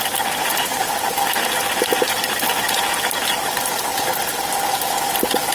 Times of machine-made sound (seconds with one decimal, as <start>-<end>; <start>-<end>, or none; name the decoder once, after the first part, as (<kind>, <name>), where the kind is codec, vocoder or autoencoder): none